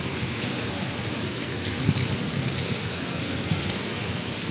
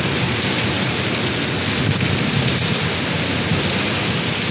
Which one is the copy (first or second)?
first